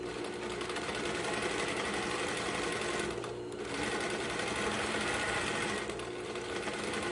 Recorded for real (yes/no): yes